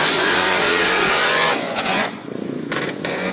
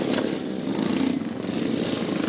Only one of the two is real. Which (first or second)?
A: second